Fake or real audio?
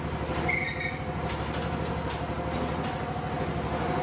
real